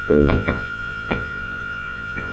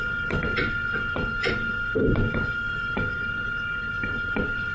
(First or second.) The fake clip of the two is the first